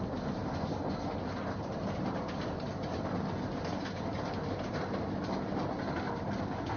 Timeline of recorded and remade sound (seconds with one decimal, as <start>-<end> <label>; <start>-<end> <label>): 0.0-6.8 recorded